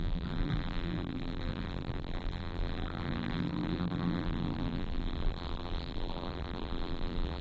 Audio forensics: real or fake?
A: fake